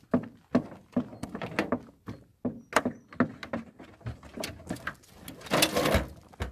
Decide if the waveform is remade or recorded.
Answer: recorded